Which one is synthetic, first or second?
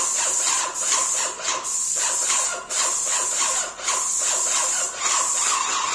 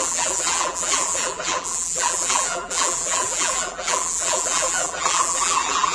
second